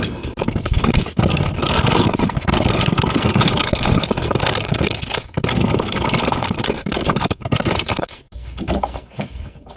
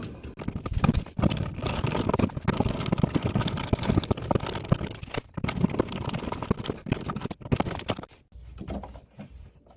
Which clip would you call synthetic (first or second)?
first